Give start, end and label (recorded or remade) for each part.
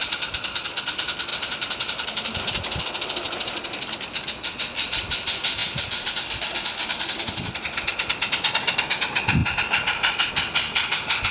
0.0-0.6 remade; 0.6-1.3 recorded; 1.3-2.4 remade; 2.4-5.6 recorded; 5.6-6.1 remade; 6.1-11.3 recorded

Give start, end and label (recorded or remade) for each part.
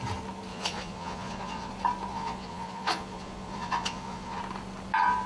0.0-0.5 recorded; 0.5-1.7 remade; 1.7-2.1 recorded; 2.1-4.4 remade; 4.4-5.3 recorded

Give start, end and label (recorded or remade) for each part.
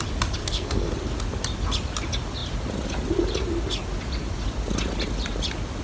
0.0-0.4 recorded; 0.4-0.9 remade; 0.9-5.8 recorded